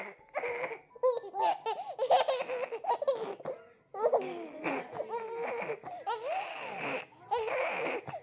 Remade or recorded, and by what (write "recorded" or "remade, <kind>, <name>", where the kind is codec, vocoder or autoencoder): recorded